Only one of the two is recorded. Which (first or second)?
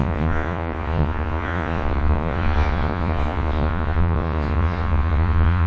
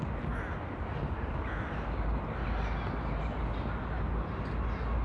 second